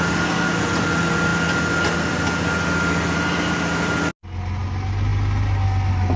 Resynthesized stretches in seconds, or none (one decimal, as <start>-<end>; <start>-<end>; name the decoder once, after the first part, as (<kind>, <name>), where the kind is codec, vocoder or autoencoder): none

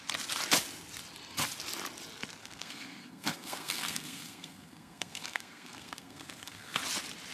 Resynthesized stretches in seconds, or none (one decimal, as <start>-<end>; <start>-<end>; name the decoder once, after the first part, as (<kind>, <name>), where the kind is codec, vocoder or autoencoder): 2.4-6.8 (codec, SNAC)

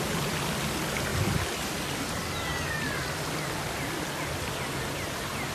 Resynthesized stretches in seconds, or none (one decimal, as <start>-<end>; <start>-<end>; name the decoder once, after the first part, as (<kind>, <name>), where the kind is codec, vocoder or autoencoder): none